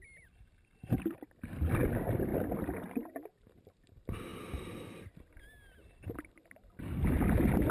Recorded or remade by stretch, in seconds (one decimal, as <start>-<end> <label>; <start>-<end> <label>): 0.0-7.7 recorded